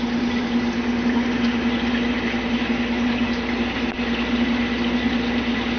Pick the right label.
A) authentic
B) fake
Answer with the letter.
A